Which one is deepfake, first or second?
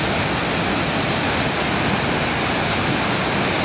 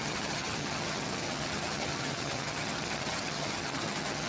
second